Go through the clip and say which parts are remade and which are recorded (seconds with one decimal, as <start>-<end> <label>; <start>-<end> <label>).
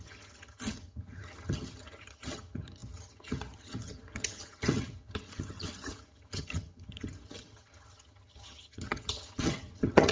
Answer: 0.0-10.1 remade